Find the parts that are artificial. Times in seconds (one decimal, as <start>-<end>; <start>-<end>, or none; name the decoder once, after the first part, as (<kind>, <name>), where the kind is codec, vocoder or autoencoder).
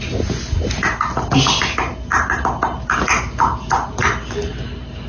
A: none